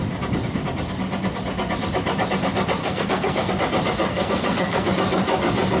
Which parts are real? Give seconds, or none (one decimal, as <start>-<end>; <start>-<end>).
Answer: 0.0-2.8; 3.5-4.1; 4.9-5.8